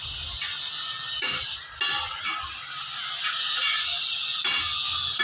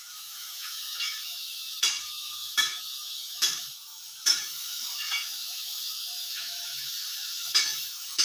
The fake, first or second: second